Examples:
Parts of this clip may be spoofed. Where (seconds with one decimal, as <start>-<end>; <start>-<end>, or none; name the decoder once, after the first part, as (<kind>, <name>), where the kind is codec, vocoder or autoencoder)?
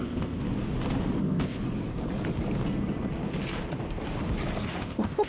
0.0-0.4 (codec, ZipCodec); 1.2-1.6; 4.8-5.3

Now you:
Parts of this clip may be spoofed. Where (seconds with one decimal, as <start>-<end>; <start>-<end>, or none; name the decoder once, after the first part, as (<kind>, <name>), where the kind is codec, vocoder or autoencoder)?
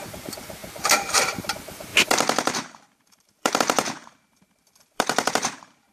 0.0-5.9 (vocoder, BigVGAN v2)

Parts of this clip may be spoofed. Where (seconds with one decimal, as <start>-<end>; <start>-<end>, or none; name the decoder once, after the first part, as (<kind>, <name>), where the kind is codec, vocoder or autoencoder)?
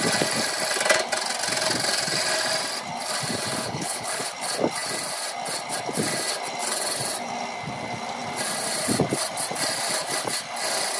3.6-4.2 (codec, HILCodec)